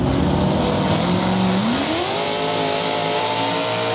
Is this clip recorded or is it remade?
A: recorded